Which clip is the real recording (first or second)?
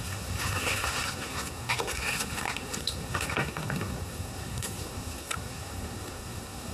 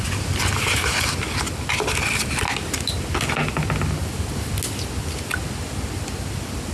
second